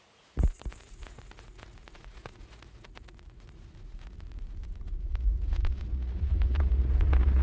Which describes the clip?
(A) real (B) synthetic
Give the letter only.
B